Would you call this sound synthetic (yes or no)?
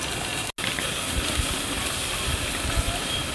no